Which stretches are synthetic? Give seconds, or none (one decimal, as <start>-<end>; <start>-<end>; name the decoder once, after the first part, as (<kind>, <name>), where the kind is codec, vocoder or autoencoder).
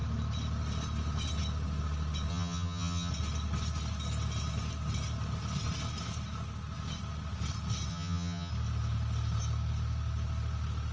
2.3-3.1 (vocoder, HiFi-GAN); 7.9-8.5